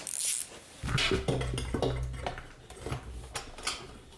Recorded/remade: recorded